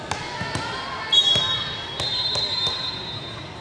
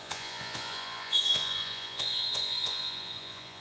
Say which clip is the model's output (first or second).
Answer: second